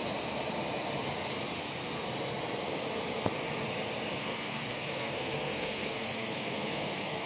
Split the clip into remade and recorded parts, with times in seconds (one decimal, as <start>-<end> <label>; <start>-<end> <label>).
0.0-4.2 recorded; 4.2-7.3 remade